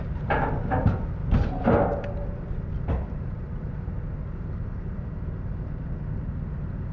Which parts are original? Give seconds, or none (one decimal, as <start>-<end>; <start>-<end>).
0.0-6.9